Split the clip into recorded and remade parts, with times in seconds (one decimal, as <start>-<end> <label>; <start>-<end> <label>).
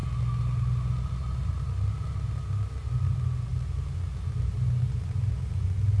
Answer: 0.0-6.0 recorded